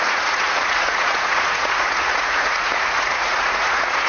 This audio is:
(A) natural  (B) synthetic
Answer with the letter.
B